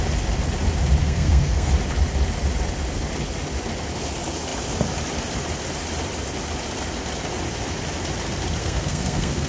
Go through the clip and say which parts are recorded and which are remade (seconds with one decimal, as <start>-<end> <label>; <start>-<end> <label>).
0.0-1.0 recorded; 1.0-1.7 remade; 1.7-8.6 recorded; 8.6-9.5 remade